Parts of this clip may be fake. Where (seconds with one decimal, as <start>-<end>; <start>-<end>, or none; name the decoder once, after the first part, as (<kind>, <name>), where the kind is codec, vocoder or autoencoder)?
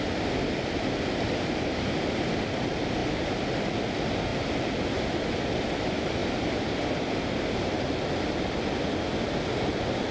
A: none